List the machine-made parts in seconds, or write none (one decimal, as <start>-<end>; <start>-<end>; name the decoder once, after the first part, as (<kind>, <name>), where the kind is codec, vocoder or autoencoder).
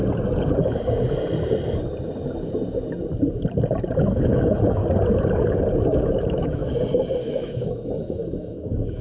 3.9-4.8 (autoencoder, DAC-VAE); 6.0-6.6; 7.2-9.0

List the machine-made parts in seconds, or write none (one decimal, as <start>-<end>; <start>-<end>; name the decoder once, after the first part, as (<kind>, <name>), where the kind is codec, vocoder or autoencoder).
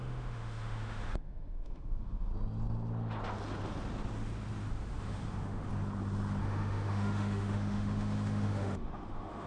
0.0-2.3 (autoencoder, DAC-VAE); 4.7-5.7; 6.4-9.5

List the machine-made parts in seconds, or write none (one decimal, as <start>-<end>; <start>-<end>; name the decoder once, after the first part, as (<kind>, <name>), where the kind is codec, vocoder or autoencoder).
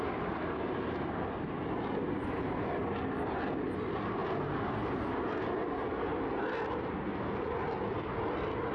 none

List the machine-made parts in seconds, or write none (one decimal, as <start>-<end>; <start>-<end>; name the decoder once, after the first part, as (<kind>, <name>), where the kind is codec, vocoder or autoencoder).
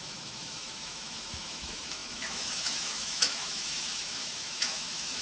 0.0-5.2 (autoencoder, DAC-VAE)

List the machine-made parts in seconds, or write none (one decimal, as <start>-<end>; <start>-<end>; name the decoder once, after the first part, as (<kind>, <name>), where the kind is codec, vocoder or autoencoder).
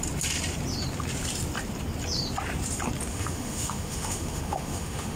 3.1-5.2 (autoencoder, DAC-VAE)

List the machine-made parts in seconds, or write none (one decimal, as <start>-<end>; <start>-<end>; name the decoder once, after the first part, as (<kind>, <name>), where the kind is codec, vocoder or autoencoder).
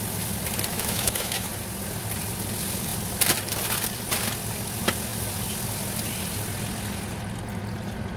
0.7-1.5 (autoencoder, DAC-VAE)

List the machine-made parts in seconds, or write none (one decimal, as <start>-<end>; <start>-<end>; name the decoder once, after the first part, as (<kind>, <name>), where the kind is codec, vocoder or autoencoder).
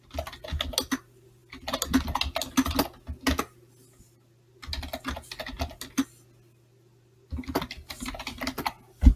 none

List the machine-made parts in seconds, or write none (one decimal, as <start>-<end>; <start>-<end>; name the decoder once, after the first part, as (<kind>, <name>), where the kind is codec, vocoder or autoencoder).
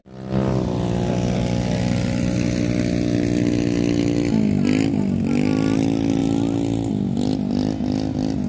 none